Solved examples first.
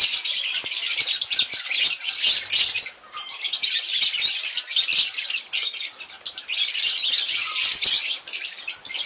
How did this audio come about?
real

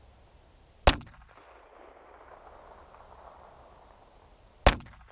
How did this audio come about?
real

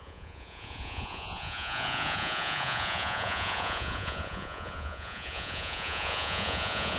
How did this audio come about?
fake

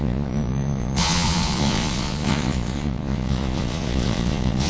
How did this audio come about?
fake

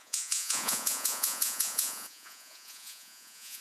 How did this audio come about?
fake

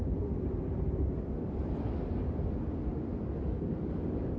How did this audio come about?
real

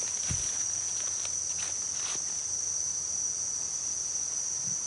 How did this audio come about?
real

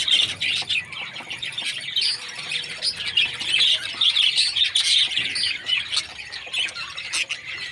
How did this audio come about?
real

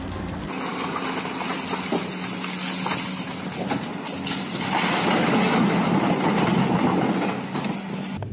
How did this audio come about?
real